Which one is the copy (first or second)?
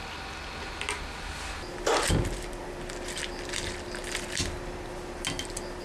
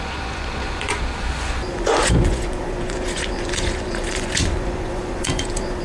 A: second